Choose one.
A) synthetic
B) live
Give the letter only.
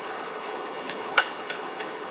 A